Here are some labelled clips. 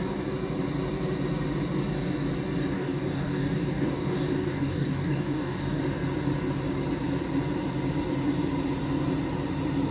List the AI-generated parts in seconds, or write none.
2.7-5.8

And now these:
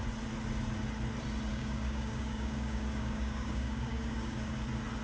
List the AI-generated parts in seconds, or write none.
1.5-4.5

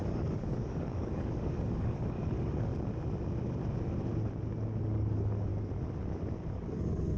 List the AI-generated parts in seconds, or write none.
0.0-2.7; 4.8-5.5; 6.5-7.2

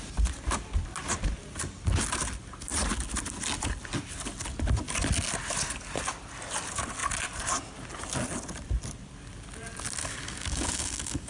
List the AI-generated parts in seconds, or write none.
10.0-11.3